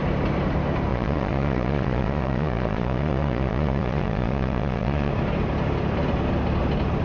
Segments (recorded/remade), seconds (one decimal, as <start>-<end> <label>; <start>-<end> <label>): 0.0-0.9 recorded; 0.9-5.1 remade; 5.1-7.0 recorded